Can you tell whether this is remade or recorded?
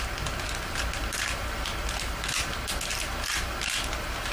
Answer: recorded